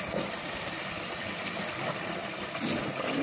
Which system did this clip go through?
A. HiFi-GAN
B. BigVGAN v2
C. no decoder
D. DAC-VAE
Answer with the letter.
B